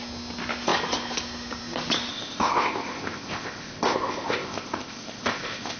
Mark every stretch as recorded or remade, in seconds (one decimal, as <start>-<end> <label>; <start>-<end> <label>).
0.0-2.1 recorded; 2.1-5.8 remade